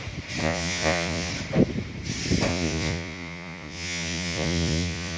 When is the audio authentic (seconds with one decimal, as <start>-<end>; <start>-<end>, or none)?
0.0-0.4; 1.3-2.5